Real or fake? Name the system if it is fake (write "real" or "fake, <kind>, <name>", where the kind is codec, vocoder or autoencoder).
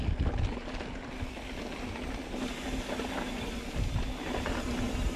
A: real